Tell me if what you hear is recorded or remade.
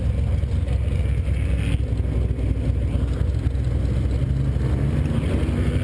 recorded